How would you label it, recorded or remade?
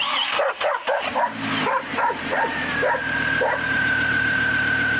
recorded